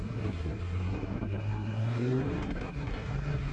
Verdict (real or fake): fake